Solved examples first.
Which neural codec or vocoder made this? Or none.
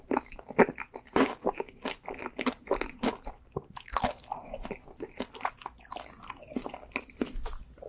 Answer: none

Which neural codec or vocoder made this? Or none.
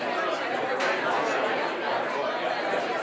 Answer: vocoder, BigVGAN v2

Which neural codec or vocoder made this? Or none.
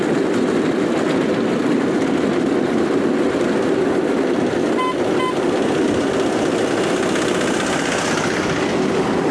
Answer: none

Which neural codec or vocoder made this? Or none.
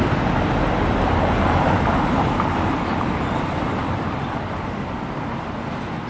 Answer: vocoder, BigVGAN v2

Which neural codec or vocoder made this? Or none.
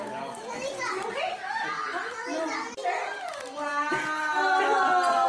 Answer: none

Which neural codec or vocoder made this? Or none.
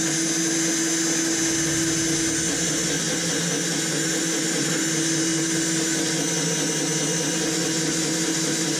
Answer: none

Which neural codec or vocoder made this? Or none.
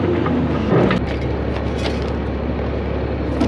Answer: none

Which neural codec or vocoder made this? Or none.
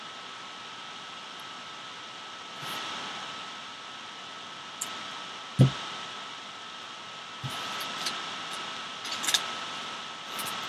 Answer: none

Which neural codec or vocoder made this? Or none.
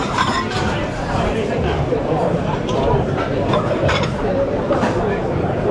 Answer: vocoder, BigVGAN v2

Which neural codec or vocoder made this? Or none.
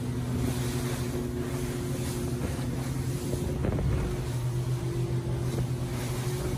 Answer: none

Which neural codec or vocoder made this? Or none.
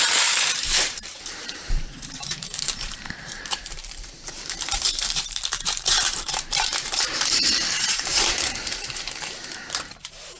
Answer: vocoder, BigVGAN v2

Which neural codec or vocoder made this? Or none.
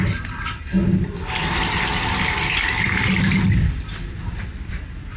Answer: vocoder, BigVGAN v2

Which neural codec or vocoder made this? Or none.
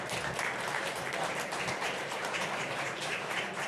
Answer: vocoder, BigVGAN v2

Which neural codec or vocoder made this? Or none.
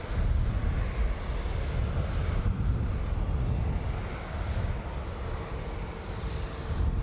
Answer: none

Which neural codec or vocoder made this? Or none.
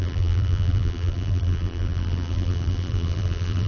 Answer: vocoder, BigVGAN v2